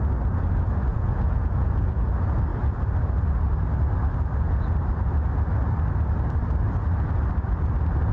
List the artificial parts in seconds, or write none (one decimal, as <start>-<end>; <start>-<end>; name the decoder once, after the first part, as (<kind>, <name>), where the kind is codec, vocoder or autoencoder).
0.9-2.1 (vocoder, Vocos)